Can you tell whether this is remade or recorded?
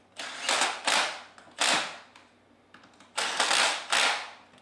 recorded